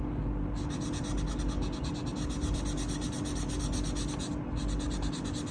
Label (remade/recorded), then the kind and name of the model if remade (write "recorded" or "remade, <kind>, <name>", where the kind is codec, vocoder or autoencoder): recorded